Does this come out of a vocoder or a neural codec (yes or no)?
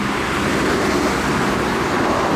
no